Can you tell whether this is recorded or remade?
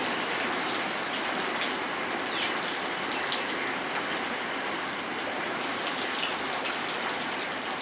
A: recorded